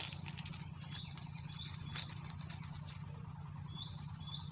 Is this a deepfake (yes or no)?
no